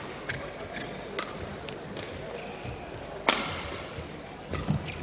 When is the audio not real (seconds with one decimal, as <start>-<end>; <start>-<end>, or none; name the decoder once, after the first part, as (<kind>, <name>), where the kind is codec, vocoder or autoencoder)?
none